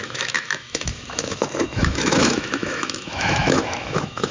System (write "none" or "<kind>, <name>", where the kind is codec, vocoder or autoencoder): autoencoder, DAC-VAE